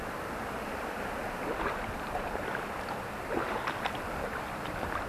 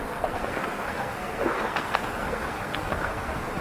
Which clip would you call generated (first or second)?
second